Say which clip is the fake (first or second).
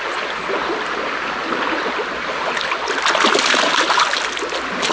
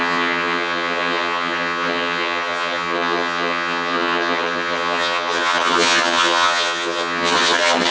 second